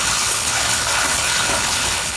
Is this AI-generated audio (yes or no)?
yes